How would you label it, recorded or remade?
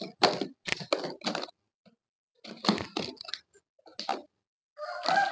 recorded